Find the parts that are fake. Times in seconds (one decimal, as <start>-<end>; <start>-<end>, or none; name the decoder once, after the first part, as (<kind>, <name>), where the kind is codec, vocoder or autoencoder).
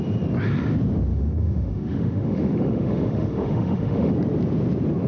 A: 1.1-4.1 (autoencoder, DAC-VAE)